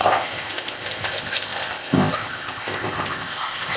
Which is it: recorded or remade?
remade